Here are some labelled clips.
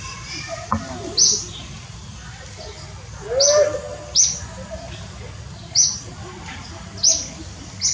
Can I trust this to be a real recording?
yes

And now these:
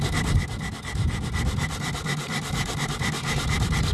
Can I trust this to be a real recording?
yes